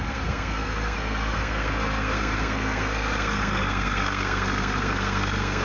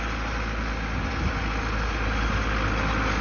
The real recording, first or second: second